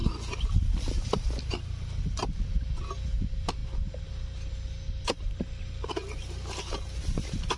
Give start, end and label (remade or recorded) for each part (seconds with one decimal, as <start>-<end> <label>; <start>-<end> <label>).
0.0-7.6 recorded